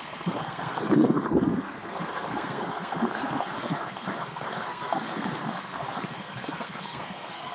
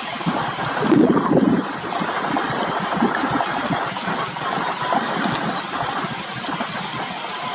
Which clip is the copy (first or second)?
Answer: first